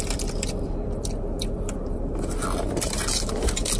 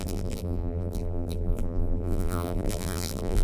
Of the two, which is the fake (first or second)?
second